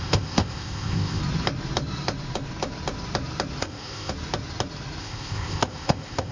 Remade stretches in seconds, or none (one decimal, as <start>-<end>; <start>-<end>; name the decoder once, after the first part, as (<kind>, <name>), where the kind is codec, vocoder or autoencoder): 0.0-1.2 (codec, ZipCodec); 3.6-4.1; 5.0-6.3